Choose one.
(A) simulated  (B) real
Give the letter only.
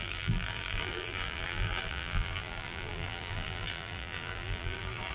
A